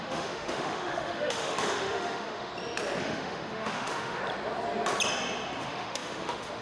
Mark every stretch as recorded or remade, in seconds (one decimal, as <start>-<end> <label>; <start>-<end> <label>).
0.0-2.5 remade; 2.5-3.0 recorded; 3.0-4.2 remade; 4.2-5.6 recorded; 5.6-6.6 remade